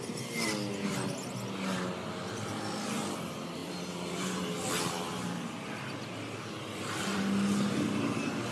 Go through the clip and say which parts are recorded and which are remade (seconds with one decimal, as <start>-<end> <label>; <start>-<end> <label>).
0.0-8.5 recorded